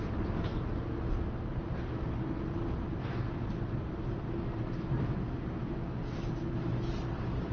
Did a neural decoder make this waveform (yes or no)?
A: no